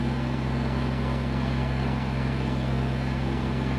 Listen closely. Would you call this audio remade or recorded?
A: remade